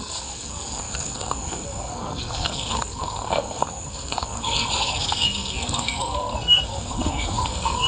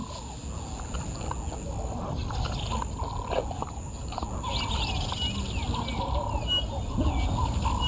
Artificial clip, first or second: first